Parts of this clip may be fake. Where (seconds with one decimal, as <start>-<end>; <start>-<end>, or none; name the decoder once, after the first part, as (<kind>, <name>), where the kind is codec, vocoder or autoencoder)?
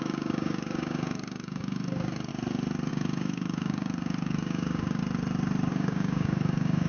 0.0-2.3 (codec, DAC); 2.9-5.0; 5.7-6.9